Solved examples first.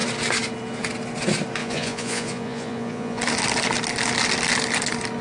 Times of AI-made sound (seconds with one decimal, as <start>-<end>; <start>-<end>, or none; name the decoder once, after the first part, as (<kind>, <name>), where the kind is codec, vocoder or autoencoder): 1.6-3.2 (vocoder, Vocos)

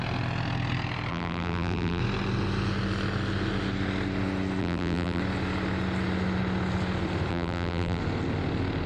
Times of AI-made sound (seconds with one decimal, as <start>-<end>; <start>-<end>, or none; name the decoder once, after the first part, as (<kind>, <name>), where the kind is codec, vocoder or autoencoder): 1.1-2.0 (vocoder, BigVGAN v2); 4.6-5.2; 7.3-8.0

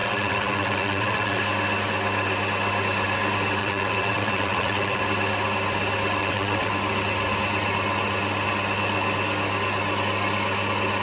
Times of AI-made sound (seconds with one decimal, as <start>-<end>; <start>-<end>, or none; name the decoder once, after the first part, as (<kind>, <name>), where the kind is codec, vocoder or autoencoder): 0.0-1.4 (vocoder, WaveNeXt); 3.6-5.0; 6.2-6.7